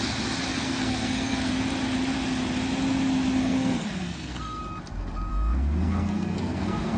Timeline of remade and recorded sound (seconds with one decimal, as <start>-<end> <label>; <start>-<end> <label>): 0.0-0.5 recorded; 0.5-1.5 remade; 1.5-3.4 recorded; 3.4-4.6 remade; 4.6-5.3 recorded; 5.3-7.0 remade